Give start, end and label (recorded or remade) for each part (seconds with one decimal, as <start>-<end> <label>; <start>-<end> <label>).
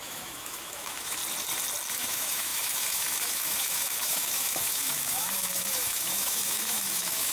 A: 0.0-1.2 remade; 1.2-1.9 recorded; 1.9-7.3 remade